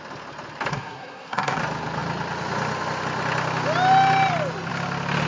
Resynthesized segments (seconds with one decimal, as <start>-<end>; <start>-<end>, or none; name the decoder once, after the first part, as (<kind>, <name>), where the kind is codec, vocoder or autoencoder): 0.7-1.6 (codec, SNAC)